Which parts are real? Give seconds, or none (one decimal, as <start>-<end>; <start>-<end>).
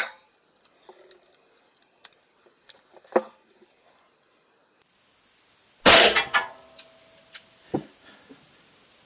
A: 0.0-9.1